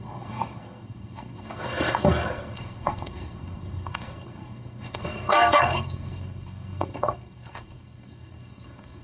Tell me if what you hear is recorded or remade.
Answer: remade